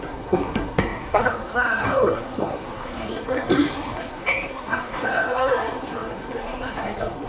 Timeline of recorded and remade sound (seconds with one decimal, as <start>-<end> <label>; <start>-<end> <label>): 0.0-7.3 remade